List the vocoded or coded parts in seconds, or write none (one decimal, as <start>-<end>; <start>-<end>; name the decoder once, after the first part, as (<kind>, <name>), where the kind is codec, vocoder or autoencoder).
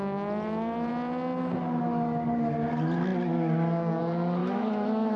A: 4.4-5.2 (autoencoder, DAC-VAE)